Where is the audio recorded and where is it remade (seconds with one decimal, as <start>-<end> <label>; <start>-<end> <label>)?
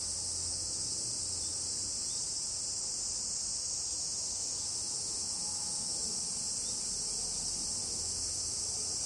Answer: 0.0-0.4 recorded; 0.4-0.9 remade; 0.9-3.5 recorded; 3.5-6.3 remade; 6.3-7.8 recorded; 7.8-8.6 remade; 8.6-9.1 recorded